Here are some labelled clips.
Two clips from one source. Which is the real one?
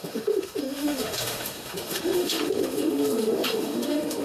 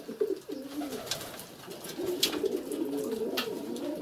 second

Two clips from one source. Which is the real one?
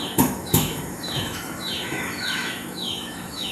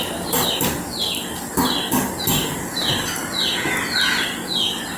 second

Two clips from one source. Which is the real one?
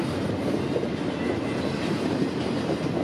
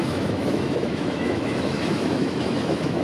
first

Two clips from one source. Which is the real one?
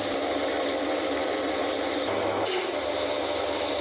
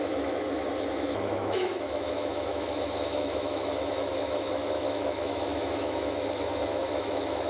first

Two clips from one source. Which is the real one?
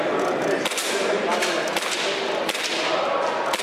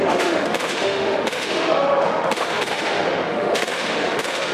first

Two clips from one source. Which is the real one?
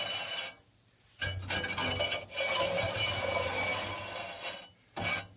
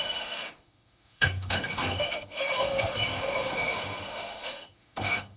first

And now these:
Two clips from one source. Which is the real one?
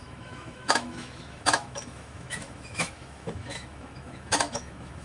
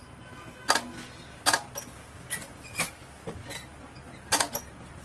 second